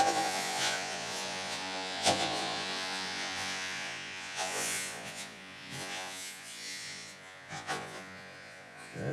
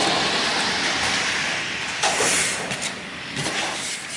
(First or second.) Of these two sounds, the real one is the second